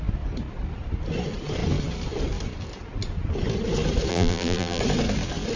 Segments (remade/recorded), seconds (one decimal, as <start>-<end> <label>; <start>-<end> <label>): 0.0-4.1 recorded; 4.1-4.8 remade; 4.8-5.6 recorded